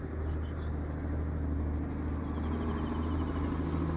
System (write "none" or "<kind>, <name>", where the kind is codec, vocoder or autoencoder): none